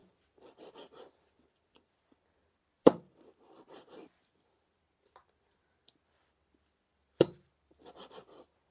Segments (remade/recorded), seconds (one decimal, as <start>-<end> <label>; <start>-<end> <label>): 0.0-8.7 recorded